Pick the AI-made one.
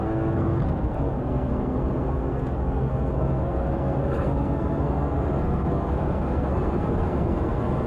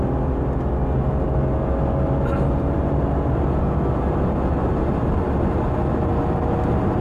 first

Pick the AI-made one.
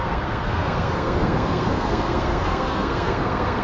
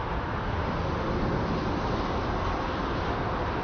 first